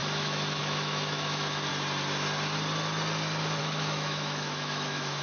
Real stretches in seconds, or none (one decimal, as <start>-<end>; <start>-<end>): 1.7-3.6